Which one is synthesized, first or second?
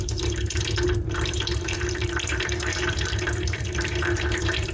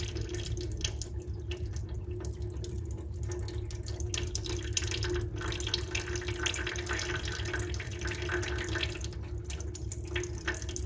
first